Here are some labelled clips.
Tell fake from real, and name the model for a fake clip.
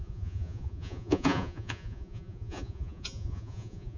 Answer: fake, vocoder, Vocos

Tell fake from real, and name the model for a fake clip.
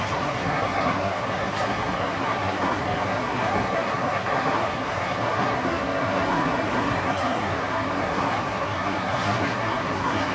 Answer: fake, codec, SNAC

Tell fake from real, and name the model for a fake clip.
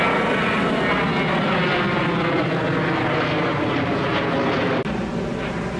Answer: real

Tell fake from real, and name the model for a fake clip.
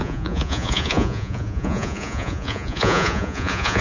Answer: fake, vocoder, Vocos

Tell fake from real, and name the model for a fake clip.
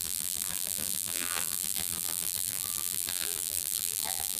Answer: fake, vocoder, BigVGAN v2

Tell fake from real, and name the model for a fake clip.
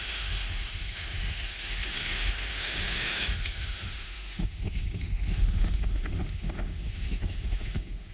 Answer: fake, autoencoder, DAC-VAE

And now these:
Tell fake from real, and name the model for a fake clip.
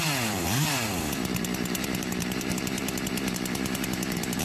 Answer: fake, vocoder, BigVGAN v2